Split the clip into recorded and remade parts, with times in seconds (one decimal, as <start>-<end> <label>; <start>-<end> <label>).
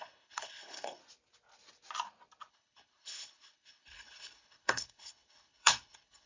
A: 0.0-1.0 remade; 1.0-2.5 recorded; 2.5-6.3 remade